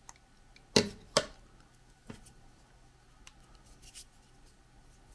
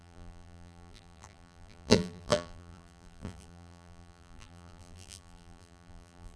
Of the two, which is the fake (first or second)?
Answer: second